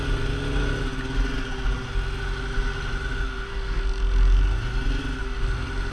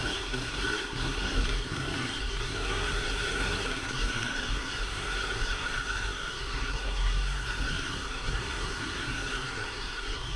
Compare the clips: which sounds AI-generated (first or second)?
second